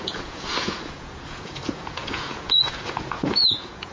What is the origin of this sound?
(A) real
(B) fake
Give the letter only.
B